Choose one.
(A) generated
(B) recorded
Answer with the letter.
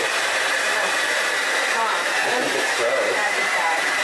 A